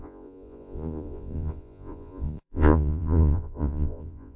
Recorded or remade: remade